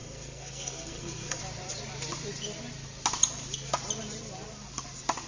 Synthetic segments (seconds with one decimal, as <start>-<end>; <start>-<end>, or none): 0.0-1.4

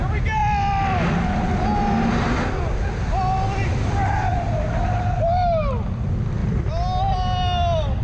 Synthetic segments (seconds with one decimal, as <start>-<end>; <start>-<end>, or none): none